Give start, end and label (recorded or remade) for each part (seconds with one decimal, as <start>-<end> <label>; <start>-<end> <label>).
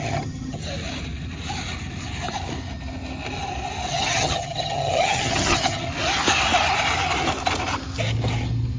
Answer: 0.0-0.6 remade; 0.6-3.9 recorded; 3.9-5.9 remade; 5.9-8.8 recorded